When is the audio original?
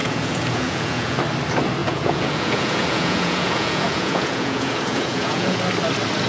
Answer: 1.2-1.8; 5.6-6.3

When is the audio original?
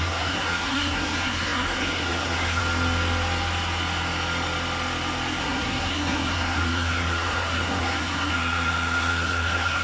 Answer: 2.6-5.4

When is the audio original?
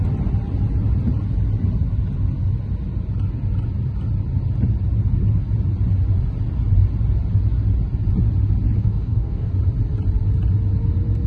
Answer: 0.0-8.8; 9.5-11.3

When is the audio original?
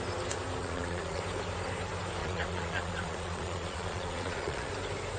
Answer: 0.0-0.6; 1.2-2.2; 4.7-5.2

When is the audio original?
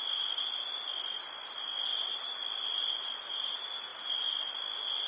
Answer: 0.0-1.9; 3.3-3.9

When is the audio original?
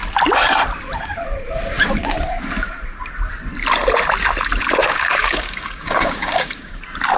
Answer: 0.0-4.8; 6.8-7.2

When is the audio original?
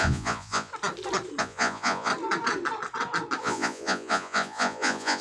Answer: 0.7-1.4; 2.1-3.4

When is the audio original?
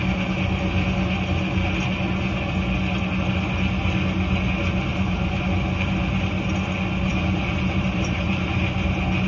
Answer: 0.0-4.9; 6.2-7.1; 8.6-9.3